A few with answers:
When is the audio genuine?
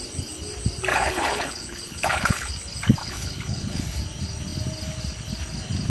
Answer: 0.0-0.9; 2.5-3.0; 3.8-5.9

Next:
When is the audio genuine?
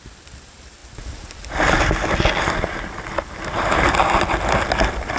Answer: 0.0-5.2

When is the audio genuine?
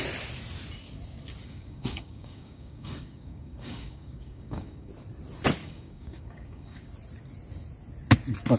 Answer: 0.0-1.4; 4.9-5.6; 6.9-8.6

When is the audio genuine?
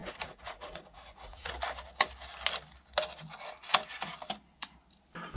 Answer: 1.5-5.4